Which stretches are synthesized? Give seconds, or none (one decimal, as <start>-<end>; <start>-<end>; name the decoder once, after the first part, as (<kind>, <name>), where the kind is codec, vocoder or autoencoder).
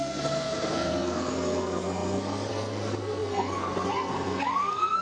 0.0-5.0 (codec, SNAC)